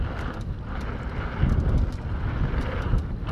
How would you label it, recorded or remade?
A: recorded